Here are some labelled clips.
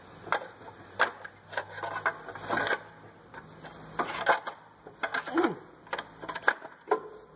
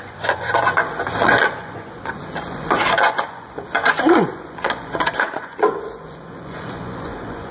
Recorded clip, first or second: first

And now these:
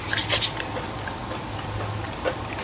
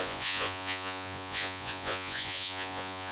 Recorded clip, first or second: first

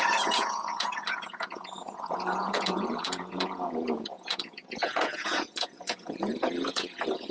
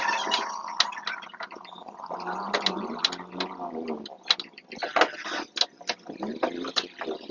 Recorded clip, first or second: second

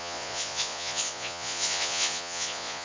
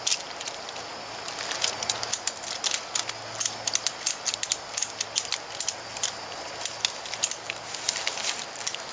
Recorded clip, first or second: second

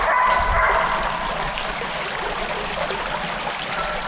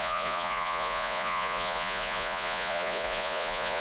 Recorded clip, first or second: first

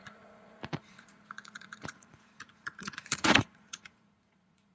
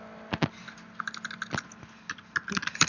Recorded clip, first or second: second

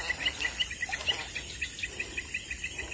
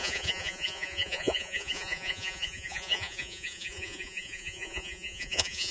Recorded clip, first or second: first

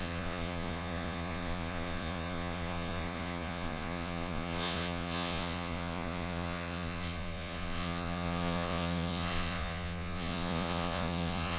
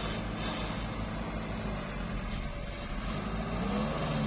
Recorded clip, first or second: second